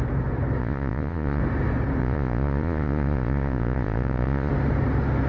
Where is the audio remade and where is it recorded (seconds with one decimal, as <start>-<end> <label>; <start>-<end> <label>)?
0.0-0.6 recorded; 0.6-1.4 remade; 1.4-2.0 recorded; 2.0-4.5 remade; 4.5-5.3 recorded